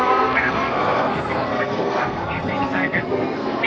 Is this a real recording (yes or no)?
no